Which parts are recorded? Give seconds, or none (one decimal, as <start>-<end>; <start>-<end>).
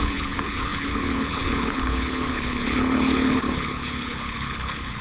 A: none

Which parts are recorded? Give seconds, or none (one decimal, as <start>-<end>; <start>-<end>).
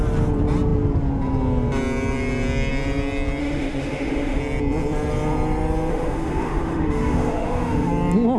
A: 0.0-3.4; 4.4-5.9; 7.9-8.4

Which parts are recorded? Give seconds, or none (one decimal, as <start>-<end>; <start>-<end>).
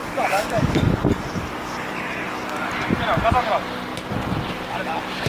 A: 2.7-5.3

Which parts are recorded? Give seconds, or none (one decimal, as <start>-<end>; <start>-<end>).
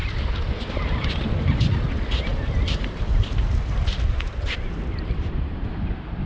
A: 1.1-2.3; 5.7-6.3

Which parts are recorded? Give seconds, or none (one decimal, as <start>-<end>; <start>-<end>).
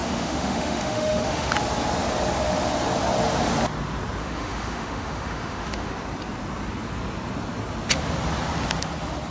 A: 1.5-4.2; 5.9-9.3